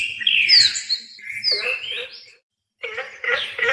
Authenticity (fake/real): fake